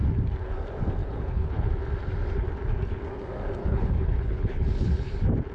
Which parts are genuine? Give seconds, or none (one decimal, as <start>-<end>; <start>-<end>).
0.0-1.0; 1.7-3.6; 5.1-5.5